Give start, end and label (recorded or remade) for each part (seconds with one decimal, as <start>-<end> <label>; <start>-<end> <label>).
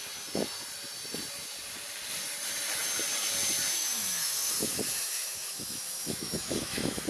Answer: 0.0-3.7 recorded; 3.7-7.1 remade